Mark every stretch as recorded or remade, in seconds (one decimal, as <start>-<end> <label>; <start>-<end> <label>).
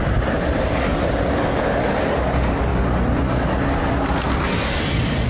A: 0.0-5.3 recorded